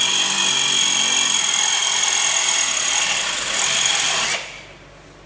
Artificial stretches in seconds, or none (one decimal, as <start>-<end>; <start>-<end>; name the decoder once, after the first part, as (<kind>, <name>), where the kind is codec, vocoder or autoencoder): none